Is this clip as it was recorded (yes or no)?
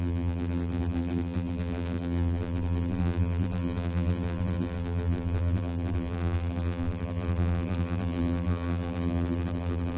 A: no